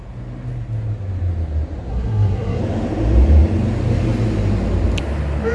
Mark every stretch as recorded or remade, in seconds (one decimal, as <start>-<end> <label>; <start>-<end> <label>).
0.0-1.9 recorded; 1.9-2.6 remade; 2.6-5.5 recorded